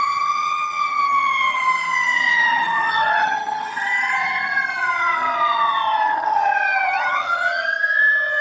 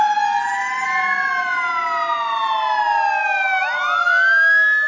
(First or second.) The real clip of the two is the second